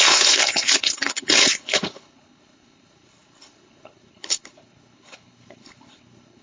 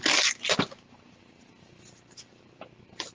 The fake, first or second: first